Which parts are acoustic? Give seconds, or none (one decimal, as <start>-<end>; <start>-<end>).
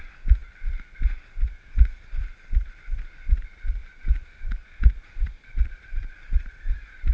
0.0-3.8; 6.5-7.1